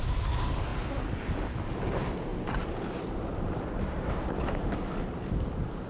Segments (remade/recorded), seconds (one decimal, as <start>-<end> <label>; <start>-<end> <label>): 0.0-2.3 recorded; 2.3-4.3 remade; 4.3-5.9 recorded

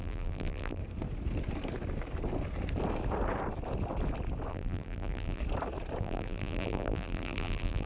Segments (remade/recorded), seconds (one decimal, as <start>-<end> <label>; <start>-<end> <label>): 0.0-0.8 remade; 0.8-4.5 recorded; 4.5-5.4 remade; 5.4-6.0 recorded; 6.0-7.9 remade